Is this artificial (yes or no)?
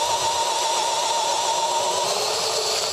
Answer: no